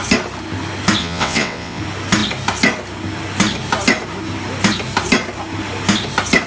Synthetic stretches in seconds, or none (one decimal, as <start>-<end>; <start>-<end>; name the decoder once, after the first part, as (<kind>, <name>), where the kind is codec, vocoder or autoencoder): 1.0-1.8 (vocoder, WaveNeXt)